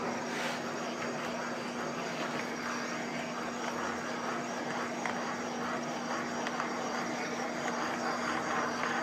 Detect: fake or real real